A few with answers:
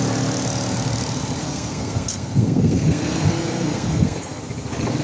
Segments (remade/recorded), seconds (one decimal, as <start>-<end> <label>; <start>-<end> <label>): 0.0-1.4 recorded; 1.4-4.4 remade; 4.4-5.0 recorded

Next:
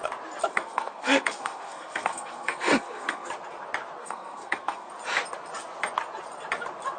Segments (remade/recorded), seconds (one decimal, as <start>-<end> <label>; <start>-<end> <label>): 0.0-0.5 recorded; 0.5-3.3 remade; 3.3-4.0 recorded; 4.0-4.9 remade; 4.9-7.0 recorded

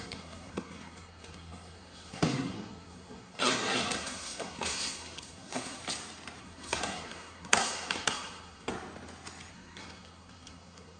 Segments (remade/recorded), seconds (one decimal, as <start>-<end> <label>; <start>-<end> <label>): 0.0-5.8 remade; 5.8-6.4 recorded; 6.4-8.7 remade; 8.7-9.5 recorded; 9.5-11.0 remade